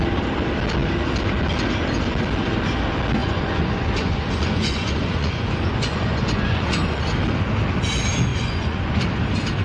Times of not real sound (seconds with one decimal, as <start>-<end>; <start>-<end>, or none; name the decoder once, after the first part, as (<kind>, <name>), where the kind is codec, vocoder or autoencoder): 3.2-7.0 (vocoder, Vocos); 8.3-9.0